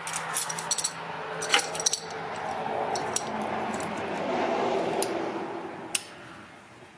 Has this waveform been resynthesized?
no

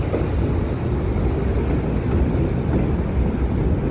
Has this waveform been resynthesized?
no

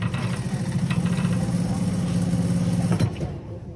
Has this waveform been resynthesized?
no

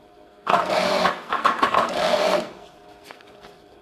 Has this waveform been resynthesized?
yes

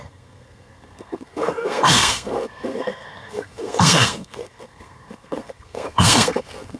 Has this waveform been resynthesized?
yes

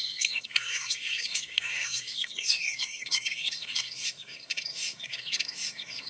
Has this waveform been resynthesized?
yes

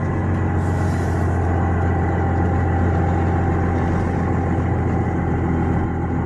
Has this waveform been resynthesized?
no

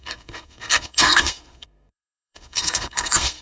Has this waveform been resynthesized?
yes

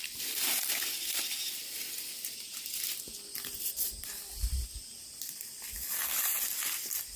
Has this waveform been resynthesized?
no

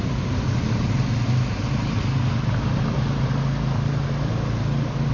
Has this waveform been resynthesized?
no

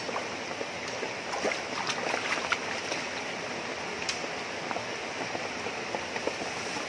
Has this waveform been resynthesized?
no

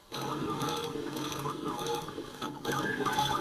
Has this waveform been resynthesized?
yes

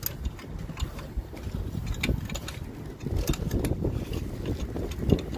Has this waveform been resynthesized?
no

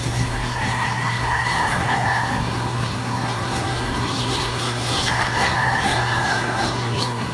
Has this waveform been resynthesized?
yes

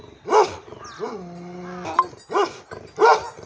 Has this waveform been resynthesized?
no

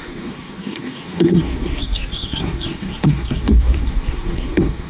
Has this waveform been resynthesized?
yes